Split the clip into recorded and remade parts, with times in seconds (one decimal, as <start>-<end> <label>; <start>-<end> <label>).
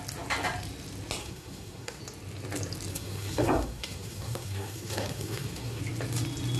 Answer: 0.0-1.2 recorded; 1.2-2.0 remade; 2.0-2.9 recorded; 2.9-5.8 remade; 5.8-6.6 recorded